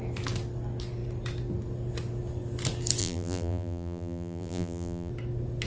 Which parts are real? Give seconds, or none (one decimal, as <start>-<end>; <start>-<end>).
0.0-3.0; 5.1-5.7